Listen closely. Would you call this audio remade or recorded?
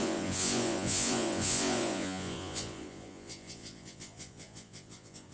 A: remade